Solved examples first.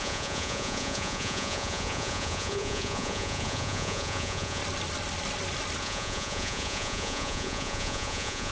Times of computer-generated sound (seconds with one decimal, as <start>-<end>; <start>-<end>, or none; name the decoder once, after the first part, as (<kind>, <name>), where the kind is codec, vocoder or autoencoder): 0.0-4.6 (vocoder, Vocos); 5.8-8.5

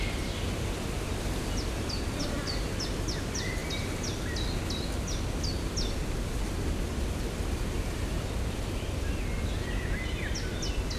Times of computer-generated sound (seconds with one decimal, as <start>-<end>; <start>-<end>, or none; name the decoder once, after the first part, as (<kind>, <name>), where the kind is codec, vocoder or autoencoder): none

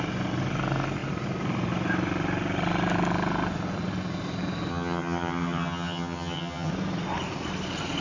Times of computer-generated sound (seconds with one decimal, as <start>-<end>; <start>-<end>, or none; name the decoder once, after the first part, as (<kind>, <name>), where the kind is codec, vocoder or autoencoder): 4.7-6.7 (vocoder, HiFi-GAN)

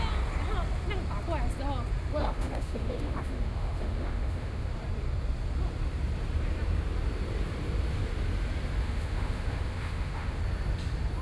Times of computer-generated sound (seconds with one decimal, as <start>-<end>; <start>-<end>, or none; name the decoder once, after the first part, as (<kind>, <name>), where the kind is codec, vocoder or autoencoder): 2.2-4.7 (autoencoder, DAC-VAE); 8.8-10.4